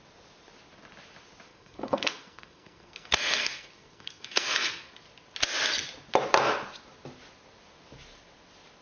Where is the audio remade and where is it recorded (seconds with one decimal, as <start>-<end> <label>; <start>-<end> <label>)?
0.0-1.5 recorded; 1.5-4.9 remade; 4.9-8.8 recorded